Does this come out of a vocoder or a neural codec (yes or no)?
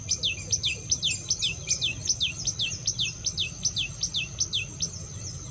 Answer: no